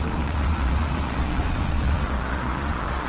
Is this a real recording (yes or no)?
no